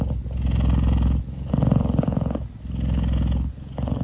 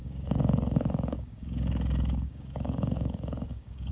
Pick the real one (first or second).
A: first